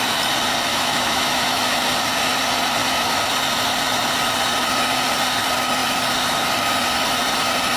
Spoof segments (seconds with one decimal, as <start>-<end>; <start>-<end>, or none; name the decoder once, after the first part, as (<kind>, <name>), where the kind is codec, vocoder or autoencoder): 0.7-1.8 (autoencoder, DAC-VAE); 2.8-3.3